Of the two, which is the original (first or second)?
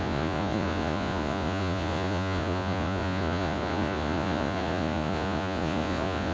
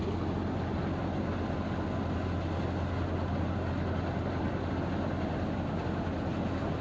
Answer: second